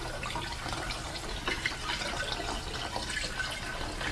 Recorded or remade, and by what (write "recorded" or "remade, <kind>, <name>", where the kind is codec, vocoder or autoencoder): recorded